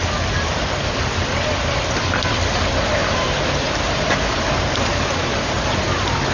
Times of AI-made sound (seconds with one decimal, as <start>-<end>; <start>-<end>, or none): 3.0-5.8